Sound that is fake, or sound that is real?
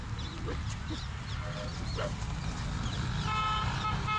real